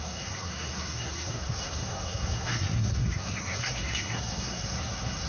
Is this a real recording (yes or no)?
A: no